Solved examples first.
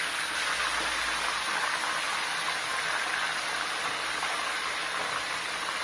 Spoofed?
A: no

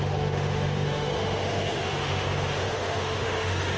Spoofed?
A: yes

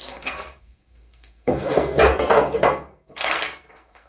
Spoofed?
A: yes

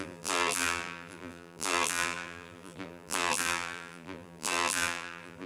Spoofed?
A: yes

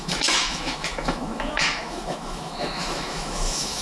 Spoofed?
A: yes